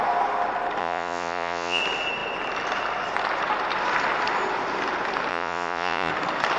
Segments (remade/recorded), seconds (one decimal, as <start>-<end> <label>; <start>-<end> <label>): 0.0-0.8 recorded; 0.8-1.8 remade; 1.8-5.3 recorded; 5.3-6.1 remade; 6.1-6.6 recorded